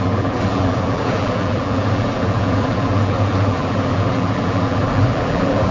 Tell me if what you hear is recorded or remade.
remade